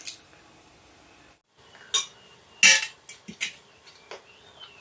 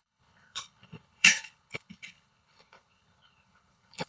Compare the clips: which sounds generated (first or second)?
second